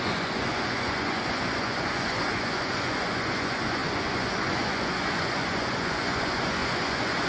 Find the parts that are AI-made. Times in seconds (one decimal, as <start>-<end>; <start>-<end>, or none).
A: 0.0-7.3